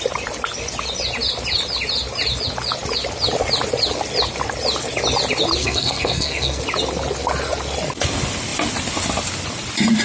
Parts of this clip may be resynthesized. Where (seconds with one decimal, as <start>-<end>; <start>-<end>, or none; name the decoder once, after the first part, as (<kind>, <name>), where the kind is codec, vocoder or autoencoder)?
5.6-6.6 (codec, SNAC)